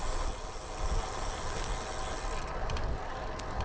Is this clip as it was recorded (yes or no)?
yes